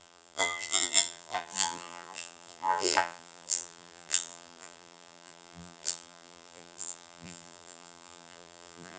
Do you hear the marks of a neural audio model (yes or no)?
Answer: yes